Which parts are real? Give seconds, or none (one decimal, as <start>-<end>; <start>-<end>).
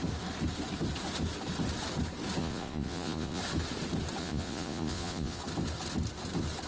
0.0-2.4; 3.4-4.2; 5.4-6.7